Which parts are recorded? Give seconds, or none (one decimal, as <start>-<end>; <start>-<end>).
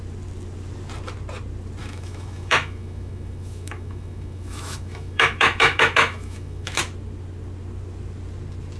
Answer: 0.0-1.8; 6.8-8.8